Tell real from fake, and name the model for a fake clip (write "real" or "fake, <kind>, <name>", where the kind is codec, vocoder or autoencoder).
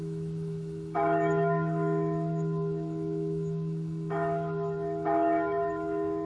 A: fake, autoencoder, DAC-VAE